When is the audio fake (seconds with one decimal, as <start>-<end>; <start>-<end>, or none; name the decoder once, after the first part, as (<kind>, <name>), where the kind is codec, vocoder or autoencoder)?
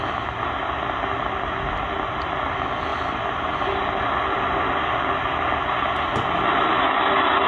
none